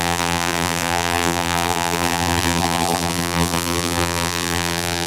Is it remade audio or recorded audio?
remade